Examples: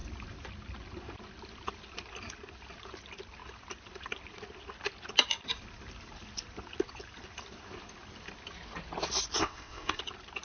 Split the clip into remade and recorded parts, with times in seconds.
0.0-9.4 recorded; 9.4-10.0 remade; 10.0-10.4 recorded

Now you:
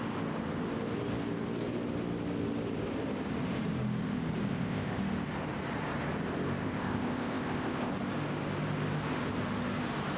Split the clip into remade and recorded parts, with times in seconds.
0.0-4.5 recorded; 4.5-5.0 remade; 5.0-6.6 recorded; 6.6-7.9 remade; 7.9-10.2 recorded

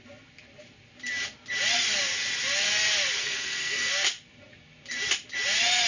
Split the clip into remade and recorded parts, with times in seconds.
0.0-3.2 recorded; 3.2-3.9 remade; 3.9-5.9 recorded

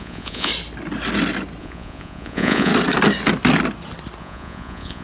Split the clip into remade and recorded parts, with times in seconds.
0.0-0.5 remade; 0.5-1.6 recorded; 1.6-2.7 remade; 2.7-4.2 recorded; 4.2-5.0 remade

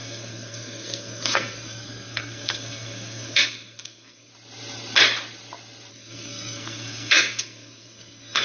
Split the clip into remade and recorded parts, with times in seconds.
0.0-4.3 remade; 4.3-5.9 recorded; 5.9-8.4 remade

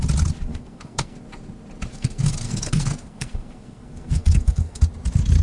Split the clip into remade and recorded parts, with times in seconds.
0.0-0.5 recorded; 0.5-1.2 remade; 1.2-1.9 recorded; 1.9-4.8 remade; 4.8-5.4 recorded

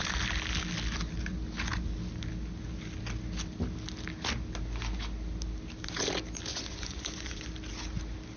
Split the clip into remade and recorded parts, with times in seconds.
0.0-6.5 recorded; 6.5-7.5 remade; 7.5-8.4 recorded

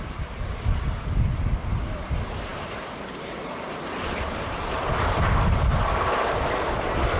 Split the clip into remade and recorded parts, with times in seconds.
0.0-7.2 recorded